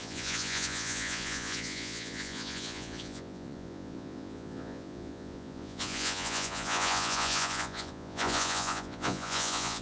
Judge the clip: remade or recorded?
remade